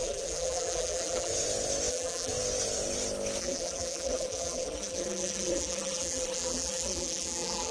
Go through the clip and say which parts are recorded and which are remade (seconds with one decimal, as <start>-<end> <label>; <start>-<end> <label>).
0.0-1.3 remade; 1.3-1.9 recorded; 1.9-2.3 remade; 2.3-3.4 recorded; 3.4-7.7 remade

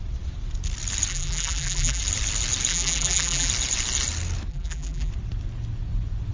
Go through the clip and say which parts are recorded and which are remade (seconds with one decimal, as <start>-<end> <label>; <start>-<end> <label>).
0.0-1.1 recorded; 1.1-2.0 remade; 2.0-2.7 recorded; 2.7-3.5 remade; 3.5-4.5 recorded; 4.5-5.1 remade; 5.1-6.3 recorded

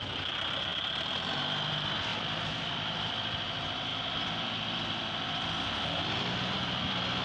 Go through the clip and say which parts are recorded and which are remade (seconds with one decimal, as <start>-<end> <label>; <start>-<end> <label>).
0.0-2.1 remade; 2.1-2.7 recorded; 2.7-7.2 remade